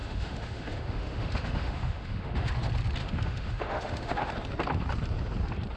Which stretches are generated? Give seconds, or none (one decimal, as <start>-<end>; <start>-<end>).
0.0-2.5; 3.0-4.3